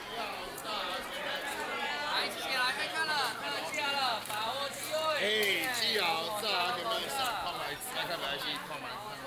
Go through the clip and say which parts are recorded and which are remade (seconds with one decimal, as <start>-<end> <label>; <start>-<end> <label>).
0.0-0.6 recorded; 0.6-1.3 remade; 1.3-2.6 recorded; 2.6-5.2 remade; 5.2-9.3 recorded